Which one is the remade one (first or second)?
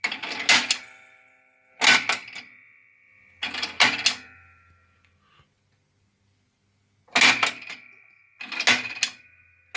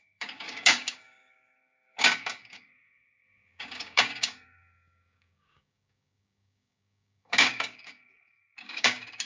second